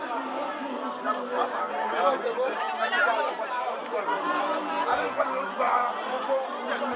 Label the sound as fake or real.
real